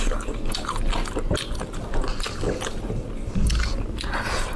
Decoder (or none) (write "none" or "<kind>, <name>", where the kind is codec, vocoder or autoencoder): none